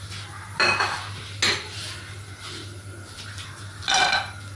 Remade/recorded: recorded